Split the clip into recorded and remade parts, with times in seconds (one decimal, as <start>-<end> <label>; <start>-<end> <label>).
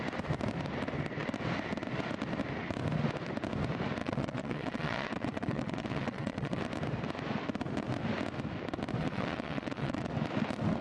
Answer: 0.0-4.0 recorded; 4.0-6.6 remade; 6.6-9.0 recorded; 9.0-10.1 remade; 10.1-10.8 recorded